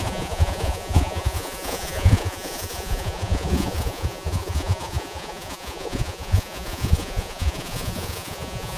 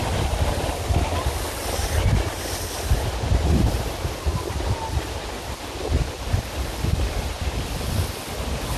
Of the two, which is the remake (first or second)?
first